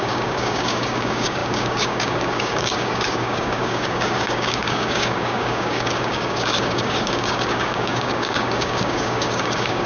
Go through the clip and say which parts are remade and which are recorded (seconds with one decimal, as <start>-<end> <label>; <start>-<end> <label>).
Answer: 0.0-9.9 remade